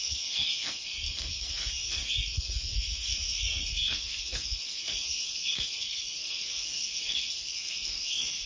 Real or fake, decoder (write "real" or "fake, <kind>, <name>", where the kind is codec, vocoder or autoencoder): fake, codec, SNAC